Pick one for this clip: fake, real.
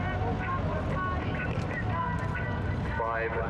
real